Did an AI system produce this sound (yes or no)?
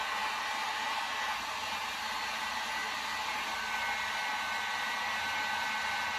no